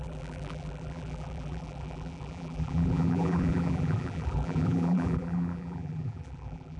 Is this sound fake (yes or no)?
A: yes